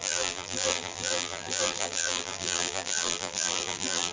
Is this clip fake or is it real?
fake